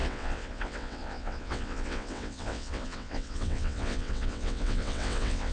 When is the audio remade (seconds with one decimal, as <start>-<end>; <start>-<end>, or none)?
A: 0.0-5.5